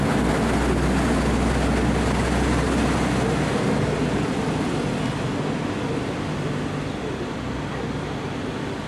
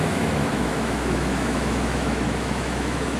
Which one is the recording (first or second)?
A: first